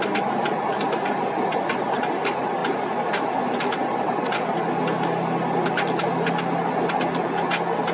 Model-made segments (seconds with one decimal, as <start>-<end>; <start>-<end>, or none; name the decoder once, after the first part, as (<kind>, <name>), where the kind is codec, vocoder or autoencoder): none